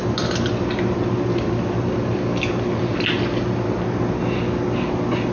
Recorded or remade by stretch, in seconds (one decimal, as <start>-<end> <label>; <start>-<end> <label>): 0.0-5.3 recorded